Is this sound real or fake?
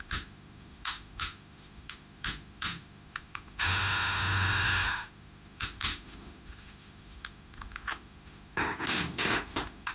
fake